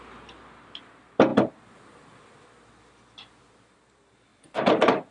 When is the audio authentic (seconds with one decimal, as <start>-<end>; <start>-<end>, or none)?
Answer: 0.0-1.3; 2.2-4.3